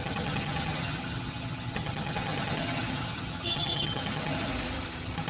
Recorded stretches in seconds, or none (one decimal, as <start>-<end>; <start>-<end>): 4.5-5.3

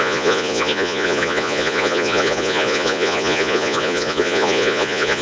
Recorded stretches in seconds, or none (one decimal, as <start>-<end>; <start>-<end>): none

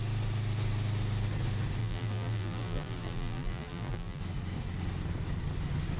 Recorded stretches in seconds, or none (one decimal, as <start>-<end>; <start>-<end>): 0.0-1.8; 4.2-6.0

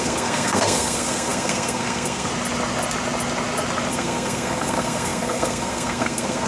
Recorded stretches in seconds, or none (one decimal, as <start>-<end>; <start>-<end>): 2.3-3.9